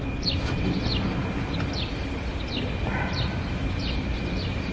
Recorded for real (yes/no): yes